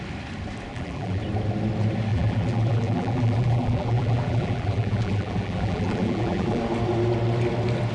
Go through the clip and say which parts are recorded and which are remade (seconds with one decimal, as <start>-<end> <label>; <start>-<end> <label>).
0.0-0.7 recorded; 0.7-1.2 remade; 1.2-2.1 recorded; 2.1-6.6 remade; 6.6-7.9 recorded